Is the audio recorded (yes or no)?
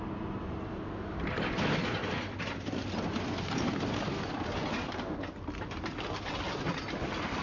yes